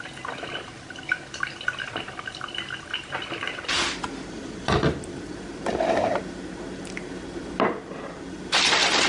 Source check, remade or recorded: remade